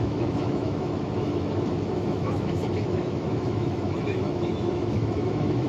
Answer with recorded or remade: remade